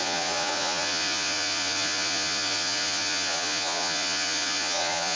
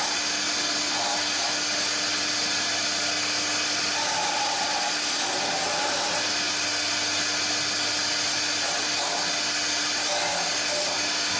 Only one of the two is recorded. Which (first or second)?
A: second